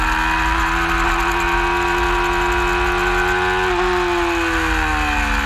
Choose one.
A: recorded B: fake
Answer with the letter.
A